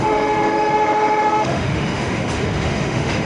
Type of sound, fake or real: fake